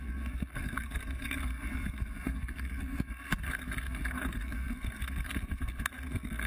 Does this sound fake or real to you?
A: fake